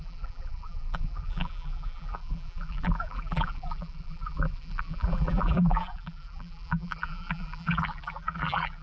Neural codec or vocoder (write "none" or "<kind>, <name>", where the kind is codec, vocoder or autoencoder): vocoder, BigVGAN v2